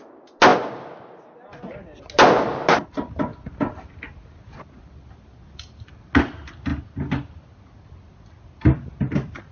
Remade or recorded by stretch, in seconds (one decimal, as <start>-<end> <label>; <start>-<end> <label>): 0.0-9.5 recorded